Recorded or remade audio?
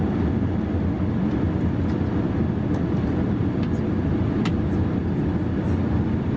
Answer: recorded